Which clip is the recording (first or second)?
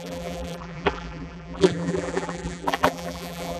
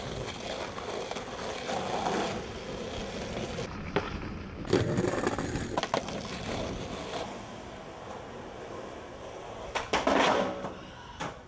second